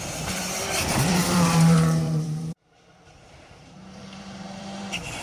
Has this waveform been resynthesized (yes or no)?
yes